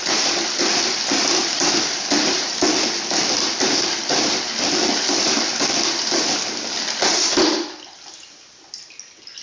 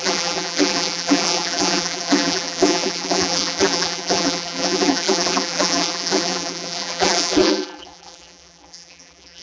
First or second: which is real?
first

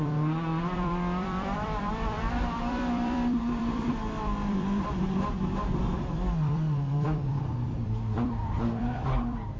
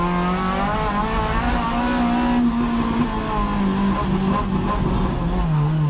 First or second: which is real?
second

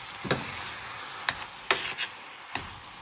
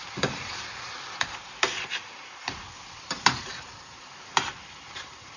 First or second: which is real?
first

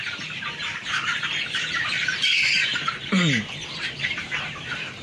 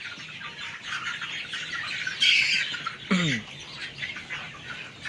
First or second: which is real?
second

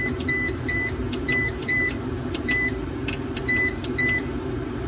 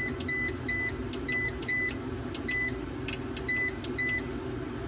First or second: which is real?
second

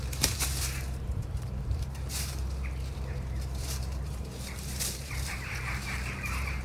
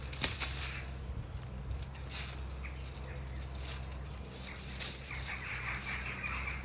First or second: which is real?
second